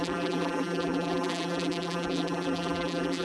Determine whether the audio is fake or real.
fake